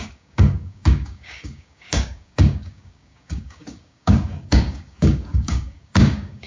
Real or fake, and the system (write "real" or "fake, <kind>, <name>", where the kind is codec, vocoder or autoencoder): fake, codec, DAC